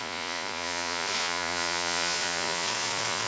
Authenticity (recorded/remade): remade